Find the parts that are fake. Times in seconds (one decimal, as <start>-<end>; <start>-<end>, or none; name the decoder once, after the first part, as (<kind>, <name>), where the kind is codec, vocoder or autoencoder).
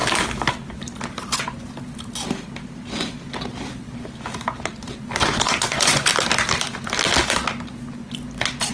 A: 5.2-6.1 (vocoder, Vocos)